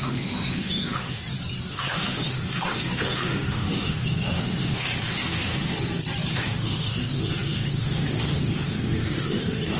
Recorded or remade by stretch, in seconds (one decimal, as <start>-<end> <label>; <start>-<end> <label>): 0.0-1.2 remade; 1.2-1.7 recorded; 1.7-5.8 remade; 5.8-6.3 recorded; 6.3-9.8 remade